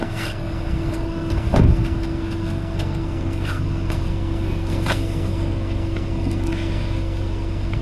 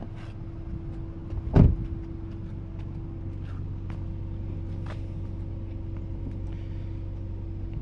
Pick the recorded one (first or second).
second